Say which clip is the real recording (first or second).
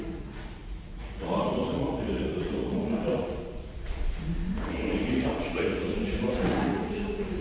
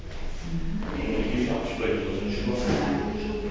second